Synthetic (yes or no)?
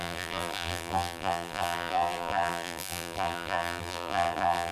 yes